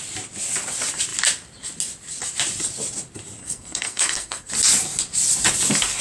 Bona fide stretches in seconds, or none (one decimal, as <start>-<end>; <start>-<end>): 0.0-3.4; 4.5-6.0